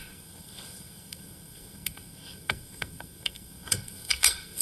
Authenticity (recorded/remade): remade